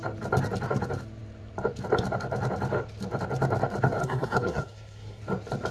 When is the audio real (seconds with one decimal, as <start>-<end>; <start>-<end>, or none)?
0.0-4.0; 5.2-5.7

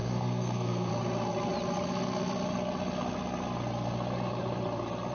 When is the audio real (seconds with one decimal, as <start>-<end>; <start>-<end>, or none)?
0.9-5.1

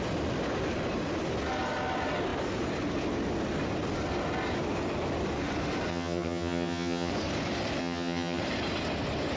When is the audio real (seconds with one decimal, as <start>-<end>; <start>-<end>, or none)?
0.0-5.9; 7.1-7.8; 8.4-9.4

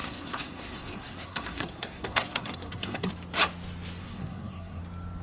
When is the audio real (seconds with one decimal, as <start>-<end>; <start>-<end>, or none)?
3.1-4.0; 4.8-5.2

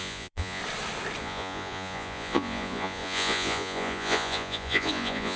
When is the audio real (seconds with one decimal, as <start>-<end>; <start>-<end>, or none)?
0.6-1.2

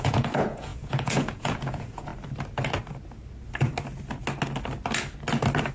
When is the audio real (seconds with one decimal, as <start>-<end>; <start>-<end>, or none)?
2.1-5.7

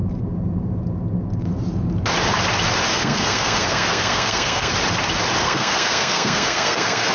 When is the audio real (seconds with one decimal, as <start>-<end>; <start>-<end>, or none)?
0.0-2.9; 4.7-5.4